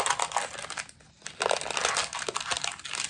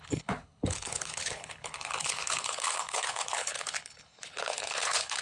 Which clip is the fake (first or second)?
second